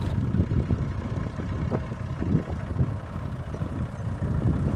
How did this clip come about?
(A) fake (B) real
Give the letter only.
B